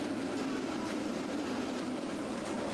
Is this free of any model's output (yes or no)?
no